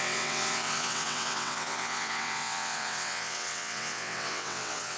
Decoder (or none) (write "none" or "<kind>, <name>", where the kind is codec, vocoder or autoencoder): vocoder, WaveNeXt